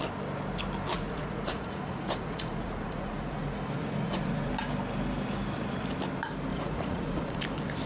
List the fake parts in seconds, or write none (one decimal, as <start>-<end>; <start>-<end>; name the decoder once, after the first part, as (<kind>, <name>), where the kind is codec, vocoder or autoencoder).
0.9-4.5 (vocoder, Vocos); 6.5-7.4